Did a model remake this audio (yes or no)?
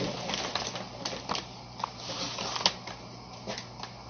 no